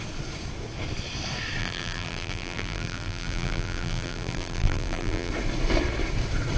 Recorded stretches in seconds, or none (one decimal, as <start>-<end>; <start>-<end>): 0.0-1.6; 5.3-6.6